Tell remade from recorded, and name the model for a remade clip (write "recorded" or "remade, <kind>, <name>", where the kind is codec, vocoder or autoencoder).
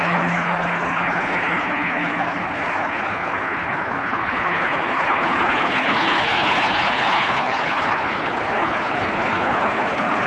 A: remade, codec, HILCodec